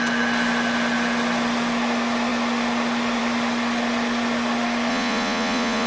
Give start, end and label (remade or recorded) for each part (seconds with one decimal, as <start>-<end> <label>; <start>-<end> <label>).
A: 0.0-4.9 recorded; 4.9-5.9 remade

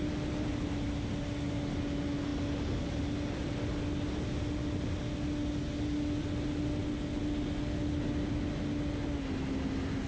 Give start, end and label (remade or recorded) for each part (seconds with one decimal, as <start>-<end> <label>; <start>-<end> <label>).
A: 0.0-10.1 recorded